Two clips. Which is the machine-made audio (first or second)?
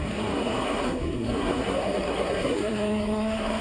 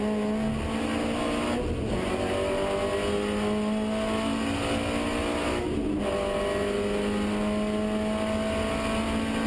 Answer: first